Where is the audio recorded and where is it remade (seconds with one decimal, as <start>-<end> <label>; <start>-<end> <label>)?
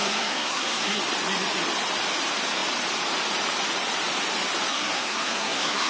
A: 0.0-1.0 remade; 1.0-4.7 recorded; 4.7-5.9 remade